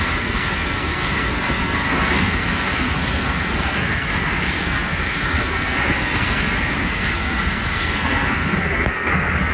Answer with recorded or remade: remade